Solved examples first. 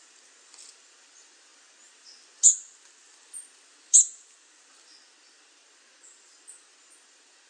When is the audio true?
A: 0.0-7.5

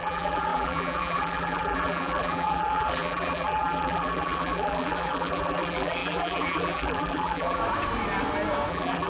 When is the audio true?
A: 7.6-8.7